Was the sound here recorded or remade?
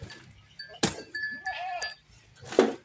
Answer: recorded